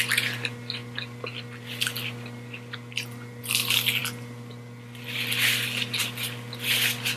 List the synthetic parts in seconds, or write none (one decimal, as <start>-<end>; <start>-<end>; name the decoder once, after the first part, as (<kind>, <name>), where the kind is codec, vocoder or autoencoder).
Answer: none

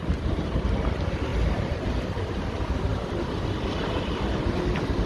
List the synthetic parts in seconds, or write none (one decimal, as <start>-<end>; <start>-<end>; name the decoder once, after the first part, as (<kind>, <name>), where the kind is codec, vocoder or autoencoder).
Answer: none

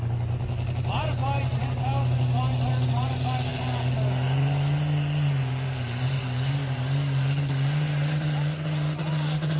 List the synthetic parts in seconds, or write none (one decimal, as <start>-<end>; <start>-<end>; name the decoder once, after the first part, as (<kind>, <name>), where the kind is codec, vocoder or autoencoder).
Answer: none

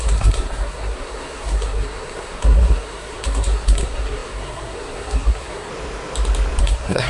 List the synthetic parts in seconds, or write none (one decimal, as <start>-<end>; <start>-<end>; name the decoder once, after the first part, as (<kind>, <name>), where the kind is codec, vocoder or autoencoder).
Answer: 0.0-5.7 (codec, SNAC); 6.6-7.1

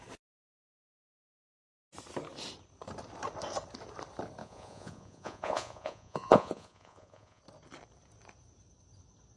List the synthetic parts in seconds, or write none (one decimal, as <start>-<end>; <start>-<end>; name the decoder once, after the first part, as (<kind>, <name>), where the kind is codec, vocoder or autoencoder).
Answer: 4.4-7.4 (vocoder, Vocos)